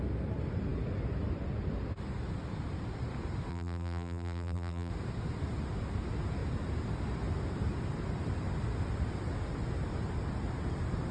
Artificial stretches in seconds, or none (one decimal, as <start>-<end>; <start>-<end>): 3.5-4.9